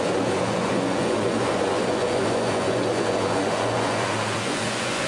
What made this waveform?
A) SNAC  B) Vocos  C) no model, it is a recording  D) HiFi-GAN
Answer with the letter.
B